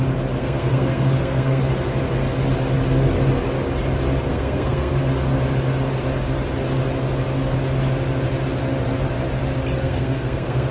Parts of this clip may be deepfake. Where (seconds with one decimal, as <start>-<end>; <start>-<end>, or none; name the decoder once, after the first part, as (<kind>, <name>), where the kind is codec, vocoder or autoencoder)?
0.4-1.6 (codec, SNAC); 4.3-4.9; 9.8-10.7